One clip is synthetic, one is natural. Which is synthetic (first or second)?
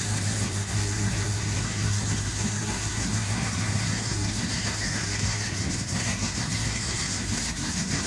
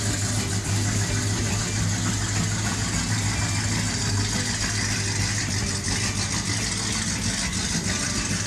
first